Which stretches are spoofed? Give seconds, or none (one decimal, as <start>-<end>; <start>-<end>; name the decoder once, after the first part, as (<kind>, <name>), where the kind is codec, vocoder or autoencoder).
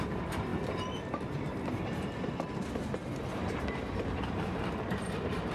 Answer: 0.0-0.5 (vocoder, BigVGAN v2); 3.8-5.5